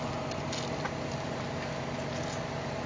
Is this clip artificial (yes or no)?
no